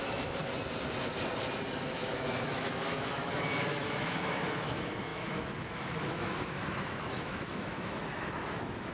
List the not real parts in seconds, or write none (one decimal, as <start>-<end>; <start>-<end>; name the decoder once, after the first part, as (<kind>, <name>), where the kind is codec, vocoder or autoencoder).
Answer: 0.0-0.4 (autoencoder, DAC-VAE); 1.8-8.9